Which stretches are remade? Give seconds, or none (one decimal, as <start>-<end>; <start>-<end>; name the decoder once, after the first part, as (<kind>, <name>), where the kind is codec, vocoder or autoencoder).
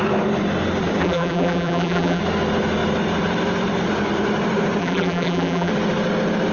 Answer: 1.0-2.2 (vocoder, BigVGAN v2); 4.8-5.7